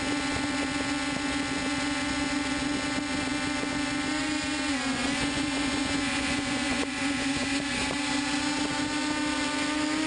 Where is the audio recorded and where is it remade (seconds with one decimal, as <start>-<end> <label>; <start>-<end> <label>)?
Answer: 0.0-4.7 recorded; 4.7-7.8 remade; 7.8-10.1 recorded